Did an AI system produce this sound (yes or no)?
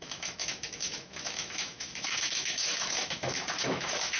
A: yes